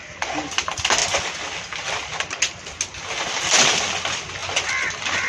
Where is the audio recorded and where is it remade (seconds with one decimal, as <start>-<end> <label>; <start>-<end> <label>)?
0.0-5.3 recorded